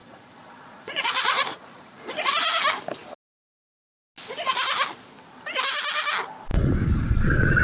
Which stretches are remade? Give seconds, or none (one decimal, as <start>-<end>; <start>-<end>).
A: 0.0-2.3; 6.5-7.6